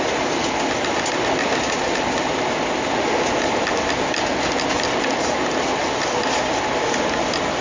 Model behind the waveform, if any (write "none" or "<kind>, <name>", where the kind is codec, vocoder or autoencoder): none